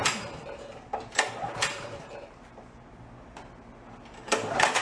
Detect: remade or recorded recorded